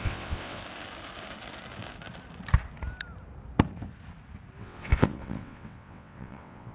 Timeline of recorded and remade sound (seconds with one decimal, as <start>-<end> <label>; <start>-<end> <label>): 0.0-0.6 remade; 0.6-4.6 recorded; 4.6-6.7 remade